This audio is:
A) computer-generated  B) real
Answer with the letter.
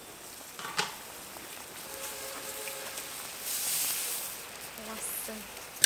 B